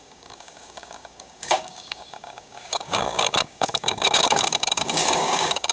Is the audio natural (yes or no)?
no